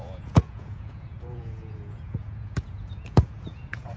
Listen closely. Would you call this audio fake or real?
fake